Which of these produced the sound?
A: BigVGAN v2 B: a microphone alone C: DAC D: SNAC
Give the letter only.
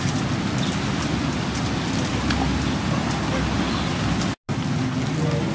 B